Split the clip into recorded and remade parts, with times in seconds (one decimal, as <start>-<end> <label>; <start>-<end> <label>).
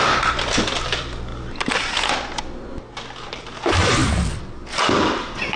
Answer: 0.0-1.3 remade; 1.3-3.0 recorded; 3.0-5.6 remade